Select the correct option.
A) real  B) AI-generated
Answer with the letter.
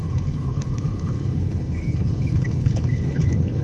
B